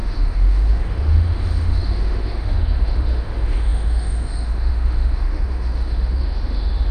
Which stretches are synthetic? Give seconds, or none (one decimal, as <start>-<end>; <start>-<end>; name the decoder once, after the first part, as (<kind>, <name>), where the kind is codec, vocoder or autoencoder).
0.0-6.9 (autoencoder, DAC-VAE)

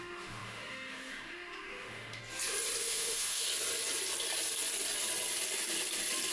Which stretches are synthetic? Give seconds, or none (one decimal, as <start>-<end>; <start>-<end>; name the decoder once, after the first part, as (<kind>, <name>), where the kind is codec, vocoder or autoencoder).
0.0-2.2 (autoencoder, DAC-VAE); 2.8-3.5

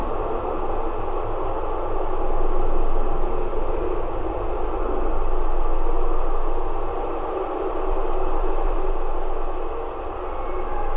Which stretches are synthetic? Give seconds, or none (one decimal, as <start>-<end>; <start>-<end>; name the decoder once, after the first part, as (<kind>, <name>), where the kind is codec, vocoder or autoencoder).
6.9-8.9 (vocoder, BigVGAN v2)